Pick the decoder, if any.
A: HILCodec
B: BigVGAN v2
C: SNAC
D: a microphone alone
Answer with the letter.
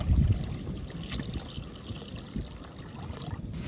D